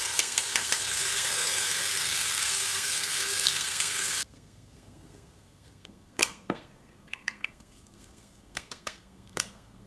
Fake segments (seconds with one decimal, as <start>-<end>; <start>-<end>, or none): 0.0-9.9